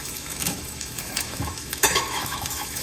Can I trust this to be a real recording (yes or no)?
no